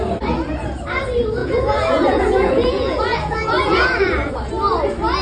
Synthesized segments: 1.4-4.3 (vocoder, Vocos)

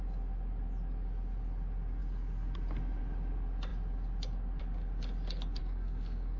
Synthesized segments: 5.6-6.4 (codec, SNAC)

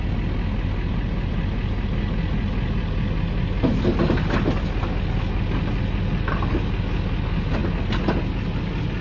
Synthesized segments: none

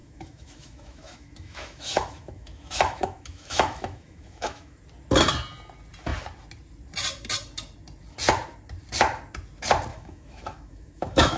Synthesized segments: 0.0-4.8 (autoencoder, DAC-VAE); 9.9-11.4

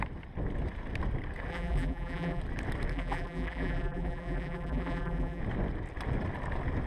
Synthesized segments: 1.5-2.4 (vocoder, BigVGAN v2); 2.9-5.4